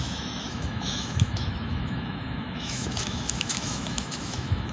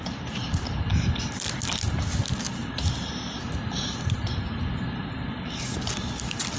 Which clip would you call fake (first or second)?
first